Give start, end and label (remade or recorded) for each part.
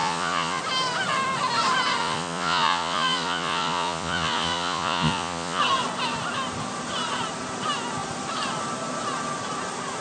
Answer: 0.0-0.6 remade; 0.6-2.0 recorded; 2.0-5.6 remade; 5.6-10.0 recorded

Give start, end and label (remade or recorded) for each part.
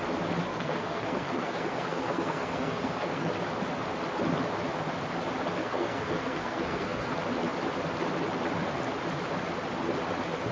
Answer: 0.0-0.5 recorded; 0.5-3.3 remade; 3.3-5.6 recorded; 5.6-7.1 remade; 7.1-10.5 recorded